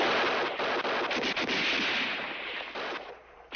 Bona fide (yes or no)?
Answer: yes